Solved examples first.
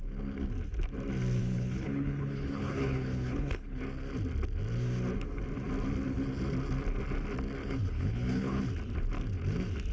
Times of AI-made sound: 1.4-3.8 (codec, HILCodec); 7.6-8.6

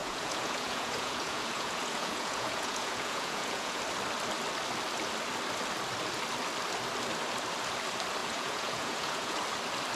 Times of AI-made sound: 0.0-3.8 (vocoder, Vocos); 8.2-9.4

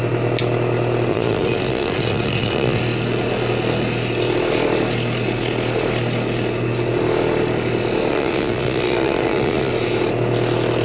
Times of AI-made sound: 1.1-2.8 (vocoder, Vocos); 8.1-9.7

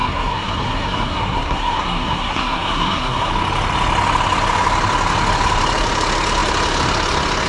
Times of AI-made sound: 0.0-3.3 (codec, SNAC)

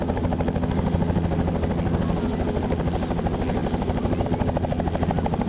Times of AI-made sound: none

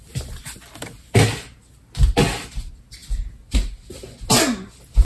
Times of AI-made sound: none

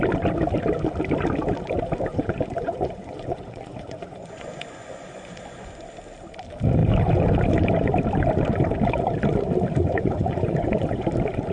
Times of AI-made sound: 2.1-5.8 (vocoder, Vocos); 9.9-11.0